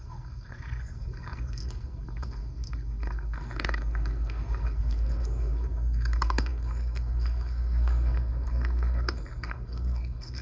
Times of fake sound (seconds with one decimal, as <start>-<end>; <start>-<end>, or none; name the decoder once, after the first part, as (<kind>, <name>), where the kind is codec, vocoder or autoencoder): 0.0-10.4 (codec, SNAC)